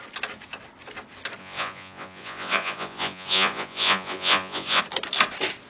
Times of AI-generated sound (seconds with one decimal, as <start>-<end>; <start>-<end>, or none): 1.4-4.8